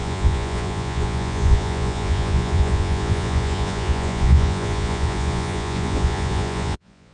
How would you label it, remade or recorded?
remade